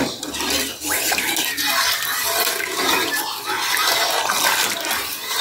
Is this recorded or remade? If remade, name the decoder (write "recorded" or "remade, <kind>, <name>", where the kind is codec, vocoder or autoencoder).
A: recorded